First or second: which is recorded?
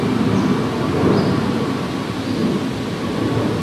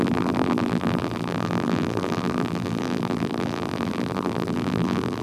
first